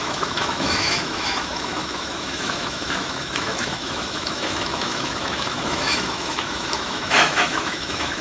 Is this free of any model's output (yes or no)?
no